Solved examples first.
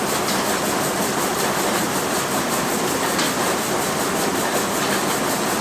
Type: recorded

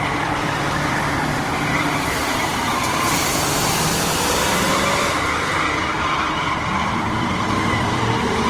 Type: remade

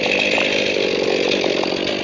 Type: recorded